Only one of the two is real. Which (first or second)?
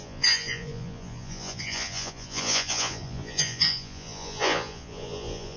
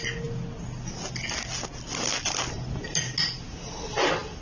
second